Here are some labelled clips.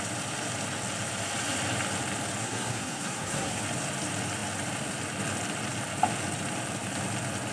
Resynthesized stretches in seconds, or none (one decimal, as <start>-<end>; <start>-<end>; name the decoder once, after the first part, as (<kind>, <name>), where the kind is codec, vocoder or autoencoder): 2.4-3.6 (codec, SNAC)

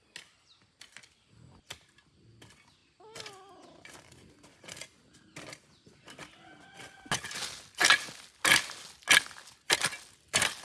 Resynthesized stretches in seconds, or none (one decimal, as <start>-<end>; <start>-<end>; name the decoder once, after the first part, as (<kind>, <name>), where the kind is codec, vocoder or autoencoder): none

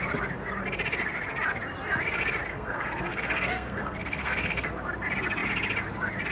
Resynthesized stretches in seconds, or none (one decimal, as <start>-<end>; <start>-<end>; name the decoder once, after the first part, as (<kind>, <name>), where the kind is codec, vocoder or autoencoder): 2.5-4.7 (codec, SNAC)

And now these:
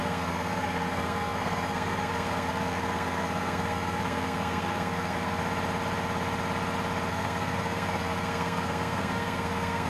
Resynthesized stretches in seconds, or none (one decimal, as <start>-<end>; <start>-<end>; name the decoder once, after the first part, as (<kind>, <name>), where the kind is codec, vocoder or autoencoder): 0.0-5.4 (codec, SNAC); 7.1-9.9

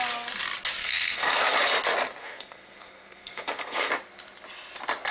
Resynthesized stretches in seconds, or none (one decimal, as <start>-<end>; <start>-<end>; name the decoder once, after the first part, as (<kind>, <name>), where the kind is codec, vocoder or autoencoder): 0.8-1.4 (codec, SNAC); 2.2-3.9